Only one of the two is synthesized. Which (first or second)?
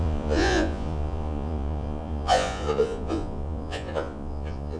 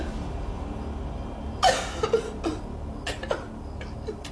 first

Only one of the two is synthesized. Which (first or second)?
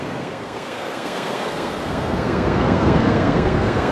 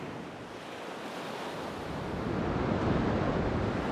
first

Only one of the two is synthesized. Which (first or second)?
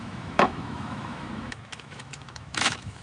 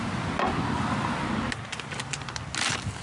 first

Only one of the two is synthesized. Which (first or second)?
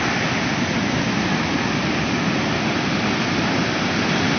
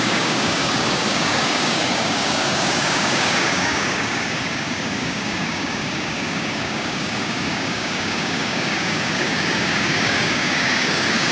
second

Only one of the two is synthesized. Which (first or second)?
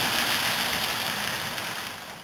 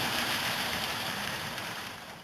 second